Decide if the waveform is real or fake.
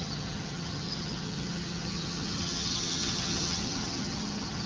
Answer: fake